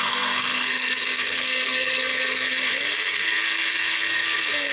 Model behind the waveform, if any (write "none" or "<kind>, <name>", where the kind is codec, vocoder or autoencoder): codec, SNAC